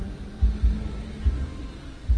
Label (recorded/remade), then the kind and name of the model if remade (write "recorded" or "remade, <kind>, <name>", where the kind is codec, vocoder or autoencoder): recorded